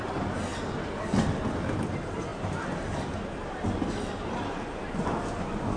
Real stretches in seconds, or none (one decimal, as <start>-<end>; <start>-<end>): 0.0-5.8